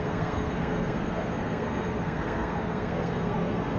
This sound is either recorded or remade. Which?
remade